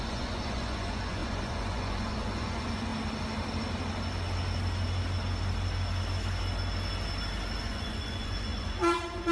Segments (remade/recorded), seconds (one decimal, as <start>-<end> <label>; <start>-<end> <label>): 0.0-2.9 remade; 2.9-7.6 recorded; 7.6-9.3 remade